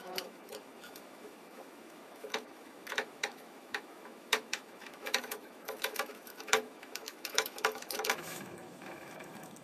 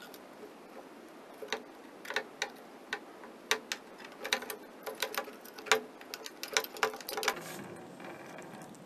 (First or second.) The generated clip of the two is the first